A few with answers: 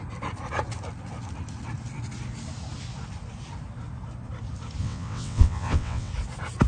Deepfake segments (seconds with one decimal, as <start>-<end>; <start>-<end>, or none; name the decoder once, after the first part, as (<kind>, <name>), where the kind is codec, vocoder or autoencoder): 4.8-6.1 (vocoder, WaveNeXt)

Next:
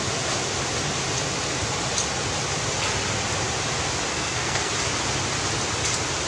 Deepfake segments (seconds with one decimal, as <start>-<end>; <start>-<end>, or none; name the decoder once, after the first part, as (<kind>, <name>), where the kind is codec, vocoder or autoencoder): 4.1-4.7 (codec, SNAC)

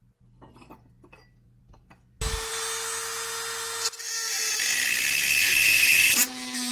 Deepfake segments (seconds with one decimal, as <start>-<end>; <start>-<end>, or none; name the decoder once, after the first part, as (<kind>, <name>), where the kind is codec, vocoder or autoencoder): none